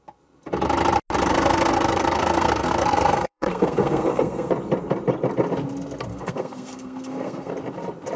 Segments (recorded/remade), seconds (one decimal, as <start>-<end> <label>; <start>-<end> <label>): 0.0-1.3 recorded; 1.3-4.5 remade; 4.5-6.1 recorded; 6.1-7.5 remade; 7.5-8.2 recorded